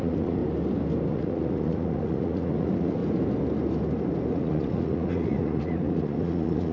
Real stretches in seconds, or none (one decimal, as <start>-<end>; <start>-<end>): 0.4-1.1; 3.0-4.3